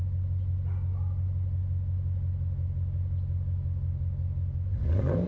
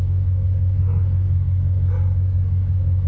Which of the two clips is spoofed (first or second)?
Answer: second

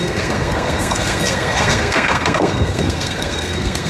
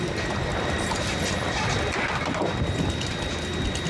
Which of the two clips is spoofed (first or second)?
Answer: first